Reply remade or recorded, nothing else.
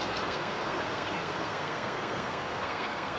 remade